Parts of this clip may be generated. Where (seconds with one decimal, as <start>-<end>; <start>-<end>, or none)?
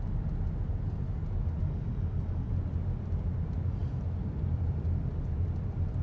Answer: 1.6-2.5